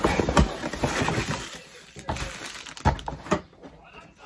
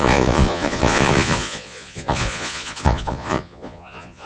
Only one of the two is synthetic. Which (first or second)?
second